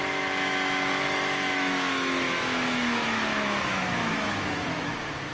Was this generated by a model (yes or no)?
yes